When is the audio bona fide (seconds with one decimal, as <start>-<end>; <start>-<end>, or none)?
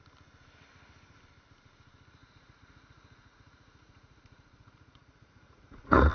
0.0-2.2